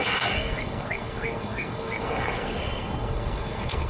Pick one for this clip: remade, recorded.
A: remade